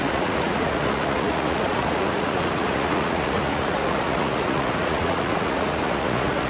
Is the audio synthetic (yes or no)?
yes